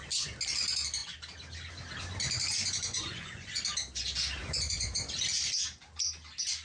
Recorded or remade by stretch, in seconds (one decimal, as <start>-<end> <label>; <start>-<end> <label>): 0.0-2.6 recorded; 2.6-3.6 remade; 3.6-4.4 recorded; 4.4-5.1 remade; 5.1-6.6 recorded